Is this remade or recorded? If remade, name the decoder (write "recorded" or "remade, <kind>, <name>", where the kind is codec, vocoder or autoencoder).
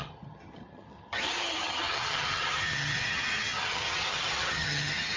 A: remade, vocoder, HiFi-GAN